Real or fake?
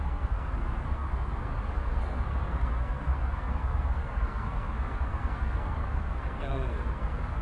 fake